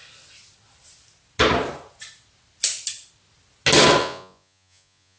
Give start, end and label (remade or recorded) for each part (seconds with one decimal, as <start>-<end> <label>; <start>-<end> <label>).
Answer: 0.0-4.0 recorded; 4.0-5.2 remade